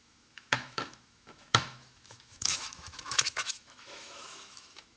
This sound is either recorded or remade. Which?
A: remade